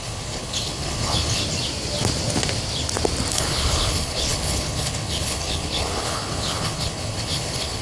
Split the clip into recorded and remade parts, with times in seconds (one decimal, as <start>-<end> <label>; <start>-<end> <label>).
0.0-1.4 remade; 1.4-3.3 recorded; 3.3-7.8 remade